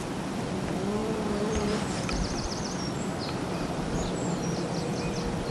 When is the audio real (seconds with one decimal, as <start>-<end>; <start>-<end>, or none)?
0.0-1.0; 4.3-5.5